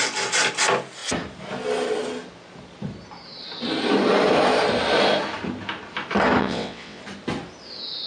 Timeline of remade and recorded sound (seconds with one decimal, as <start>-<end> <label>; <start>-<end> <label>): 0.0-6.4 recorded; 6.4-7.0 remade; 7.0-8.1 recorded